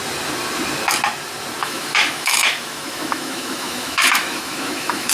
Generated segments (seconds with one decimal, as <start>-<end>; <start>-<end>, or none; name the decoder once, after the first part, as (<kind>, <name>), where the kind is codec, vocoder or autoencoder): 1.6-5.1 (autoencoder, DAC-VAE)